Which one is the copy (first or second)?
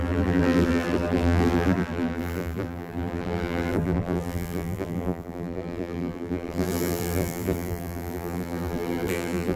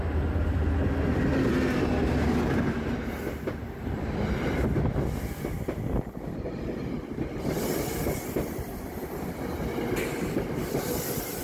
first